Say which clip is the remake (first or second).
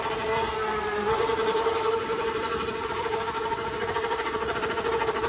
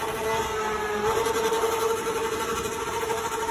first